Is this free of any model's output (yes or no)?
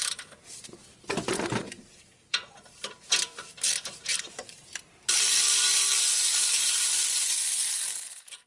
no